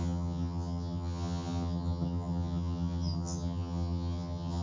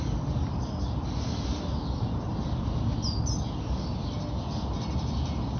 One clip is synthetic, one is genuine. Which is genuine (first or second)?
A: second